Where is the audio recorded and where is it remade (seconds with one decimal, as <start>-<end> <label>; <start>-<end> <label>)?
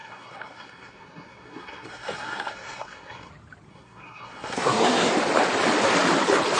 0.0-3.3 remade; 3.3-3.7 recorded; 3.7-5.1 remade; 5.1-6.6 recorded